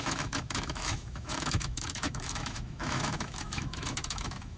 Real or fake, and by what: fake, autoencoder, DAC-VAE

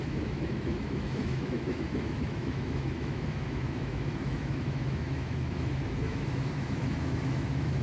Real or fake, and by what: fake, autoencoder, DAC-VAE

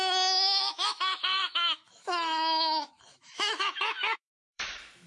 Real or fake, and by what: fake, autoencoder, DAC-VAE